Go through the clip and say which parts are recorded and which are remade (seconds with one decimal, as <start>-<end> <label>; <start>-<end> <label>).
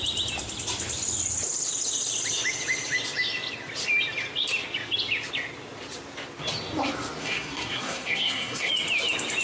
0.0-7.2 recorded; 7.2-8.7 remade; 8.7-9.4 recorded